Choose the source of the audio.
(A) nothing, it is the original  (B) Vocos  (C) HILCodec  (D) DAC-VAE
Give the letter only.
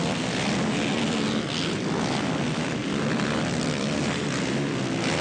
A